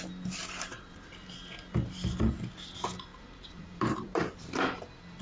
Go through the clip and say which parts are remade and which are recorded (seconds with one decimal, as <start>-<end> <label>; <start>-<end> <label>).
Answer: 0.0-0.4 recorded; 0.4-1.3 remade; 1.3-3.1 recorded; 3.1-4.8 remade; 4.8-5.2 recorded